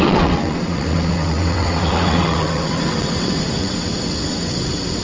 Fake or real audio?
fake